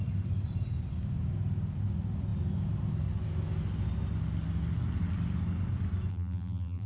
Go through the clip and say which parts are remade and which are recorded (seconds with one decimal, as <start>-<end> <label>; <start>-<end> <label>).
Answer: 0.0-6.1 recorded; 6.1-6.9 remade

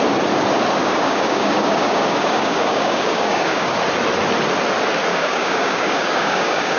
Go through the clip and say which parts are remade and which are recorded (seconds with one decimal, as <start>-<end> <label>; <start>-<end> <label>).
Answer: 0.0-0.8 recorded; 0.8-3.8 remade; 3.8-5.1 recorded; 5.1-6.8 remade

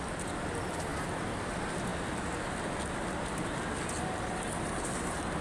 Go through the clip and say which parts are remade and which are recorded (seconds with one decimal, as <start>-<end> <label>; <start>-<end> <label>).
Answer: 0.0-5.4 recorded

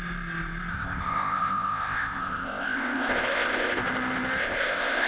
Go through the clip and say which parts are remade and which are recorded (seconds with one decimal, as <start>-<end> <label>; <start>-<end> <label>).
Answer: 0.0-0.7 recorded; 0.7-3.8 remade; 3.8-4.4 recorded; 4.4-5.1 remade